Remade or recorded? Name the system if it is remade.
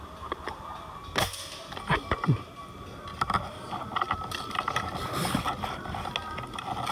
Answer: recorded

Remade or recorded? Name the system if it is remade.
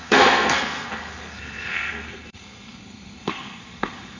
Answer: remade, codec, SNAC